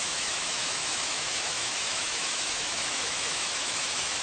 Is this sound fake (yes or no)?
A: yes